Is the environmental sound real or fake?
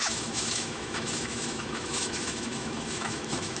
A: fake